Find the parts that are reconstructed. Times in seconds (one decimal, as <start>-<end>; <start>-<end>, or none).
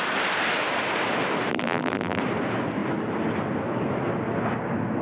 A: 1.5-2.2